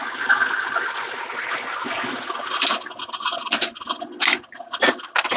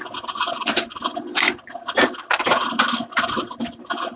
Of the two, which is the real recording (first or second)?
first